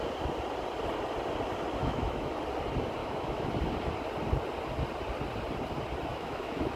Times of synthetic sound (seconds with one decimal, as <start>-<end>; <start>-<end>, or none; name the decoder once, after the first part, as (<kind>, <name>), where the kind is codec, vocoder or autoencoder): 1.8-2.3 (autoencoder, DAC-VAE); 3.0-3.5; 6.1-6.8